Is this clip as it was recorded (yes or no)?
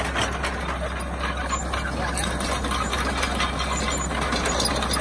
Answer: yes